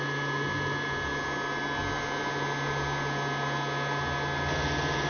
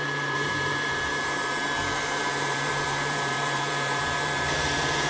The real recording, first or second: first